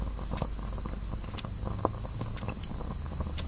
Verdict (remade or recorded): recorded